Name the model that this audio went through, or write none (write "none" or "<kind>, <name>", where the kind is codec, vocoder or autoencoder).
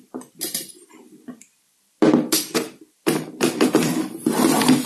vocoder, BigVGAN v2